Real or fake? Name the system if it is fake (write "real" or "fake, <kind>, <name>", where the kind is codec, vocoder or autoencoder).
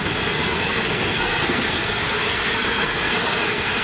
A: fake, codec, SNAC